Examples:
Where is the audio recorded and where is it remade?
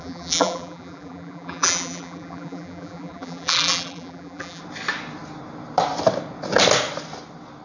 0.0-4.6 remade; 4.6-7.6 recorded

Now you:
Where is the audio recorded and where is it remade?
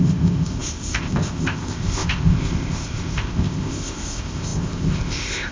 0.0-5.5 remade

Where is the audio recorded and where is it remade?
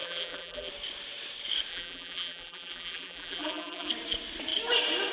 0.0-0.7 remade; 0.7-1.7 recorded; 1.7-3.9 remade; 3.9-5.1 recorded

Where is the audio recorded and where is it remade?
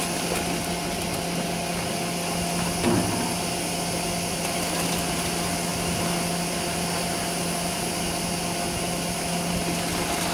0.0-10.3 recorded